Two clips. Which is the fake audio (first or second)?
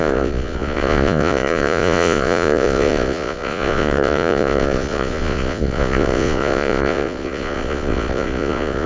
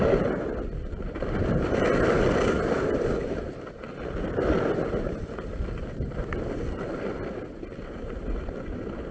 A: first